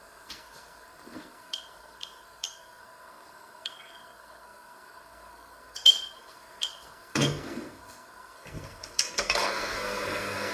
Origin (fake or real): fake